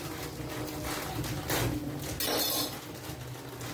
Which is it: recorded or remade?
recorded